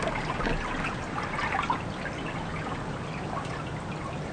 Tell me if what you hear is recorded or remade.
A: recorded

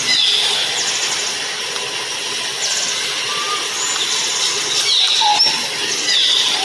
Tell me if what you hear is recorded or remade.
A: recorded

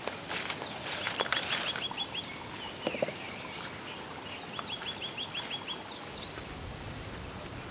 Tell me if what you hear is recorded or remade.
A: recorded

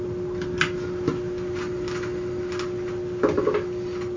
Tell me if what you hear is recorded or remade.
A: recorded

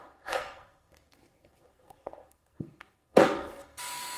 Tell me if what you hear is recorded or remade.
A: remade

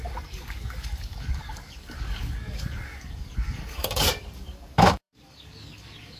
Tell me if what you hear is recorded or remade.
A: remade